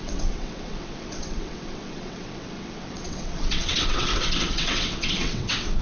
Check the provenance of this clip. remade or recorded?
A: remade